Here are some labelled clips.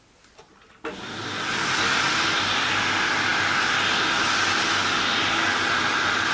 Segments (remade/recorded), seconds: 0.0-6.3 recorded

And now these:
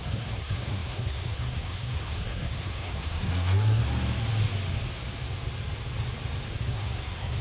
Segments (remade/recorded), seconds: 0.0-3.8 remade; 3.8-6.5 recorded; 6.5-7.4 remade